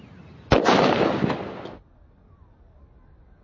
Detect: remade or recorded recorded